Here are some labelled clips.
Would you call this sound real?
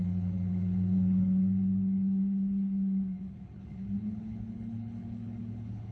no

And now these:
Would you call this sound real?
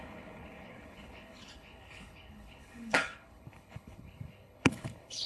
no